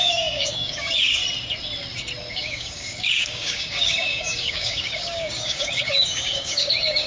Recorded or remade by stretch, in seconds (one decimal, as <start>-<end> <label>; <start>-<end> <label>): 0.0-1.2 remade; 1.2-2.3 recorded; 2.3-7.1 remade